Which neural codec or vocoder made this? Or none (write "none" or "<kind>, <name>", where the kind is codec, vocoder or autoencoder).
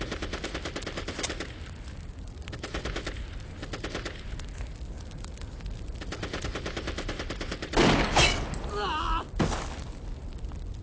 none